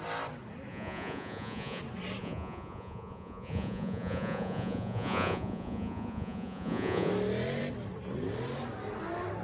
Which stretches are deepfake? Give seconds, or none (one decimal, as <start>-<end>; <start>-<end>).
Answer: 0.7-1.8; 2.2-7.1